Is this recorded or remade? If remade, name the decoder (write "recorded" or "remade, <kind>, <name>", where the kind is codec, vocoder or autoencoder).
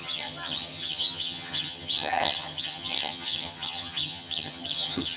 remade, vocoder, HiFi-GAN